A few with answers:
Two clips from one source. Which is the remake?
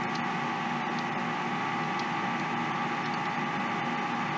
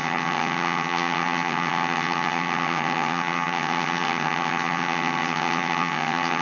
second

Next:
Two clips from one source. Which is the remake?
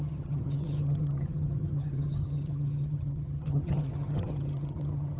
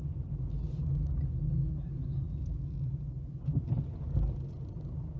first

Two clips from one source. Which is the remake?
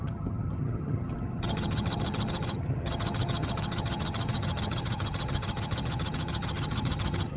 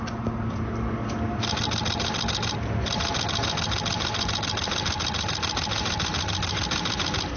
first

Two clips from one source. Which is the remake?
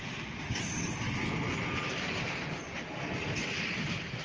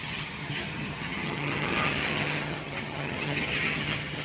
second